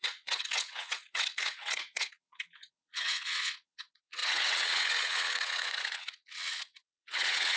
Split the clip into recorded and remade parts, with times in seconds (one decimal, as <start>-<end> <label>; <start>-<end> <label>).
0.0-7.6 remade

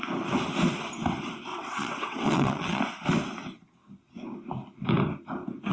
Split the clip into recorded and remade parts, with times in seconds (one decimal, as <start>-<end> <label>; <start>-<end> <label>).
0.0-1.5 recorded; 1.5-2.8 remade; 2.8-5.7 recorded

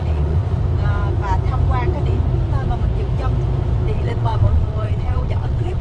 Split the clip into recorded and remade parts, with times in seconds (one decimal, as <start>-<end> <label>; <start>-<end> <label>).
0.0-0.4 remade; 0.4-3.9 recorded; 3.9-5.8 remade

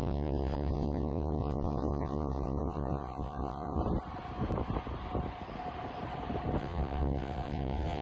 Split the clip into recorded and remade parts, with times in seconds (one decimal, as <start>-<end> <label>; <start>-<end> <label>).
0.0-3.8 remade; 3.8-6.6 recorded; 6.6-8.0 remade

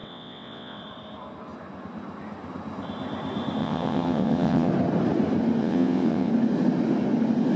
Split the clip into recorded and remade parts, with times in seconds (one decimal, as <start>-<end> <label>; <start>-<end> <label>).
0.0-0.8 remade; 0.8-3.6 recorded; 3.6-4.7 remade; 4.7-5.6 recorded; 5.6-6.3 remade; 6.3-7.6 recorded

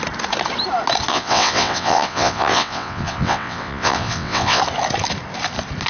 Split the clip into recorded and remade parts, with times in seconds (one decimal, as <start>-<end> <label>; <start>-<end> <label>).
0.0-1.1 recorded; 1.1-4.6 remade; 4.6-5.9 recorded

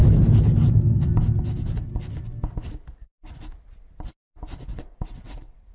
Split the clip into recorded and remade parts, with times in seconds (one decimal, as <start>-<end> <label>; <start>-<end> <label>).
0.0-4.7 recorded; 4.7-5.7 remade

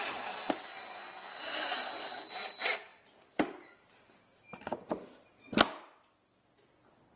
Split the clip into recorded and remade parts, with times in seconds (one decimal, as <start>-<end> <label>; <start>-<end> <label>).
0.0-7.2 recorded